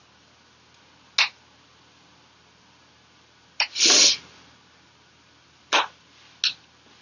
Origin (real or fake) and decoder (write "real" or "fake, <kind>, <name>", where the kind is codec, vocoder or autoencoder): real